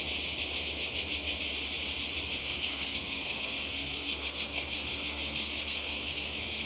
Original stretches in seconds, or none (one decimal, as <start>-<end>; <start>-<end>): 0.0-2.4